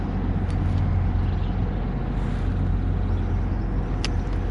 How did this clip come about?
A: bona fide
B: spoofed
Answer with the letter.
A